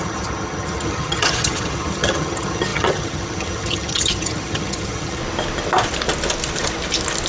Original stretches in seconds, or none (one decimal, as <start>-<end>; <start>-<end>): 5.2-7.3